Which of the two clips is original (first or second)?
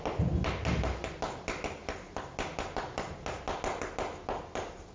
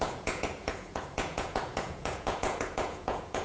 first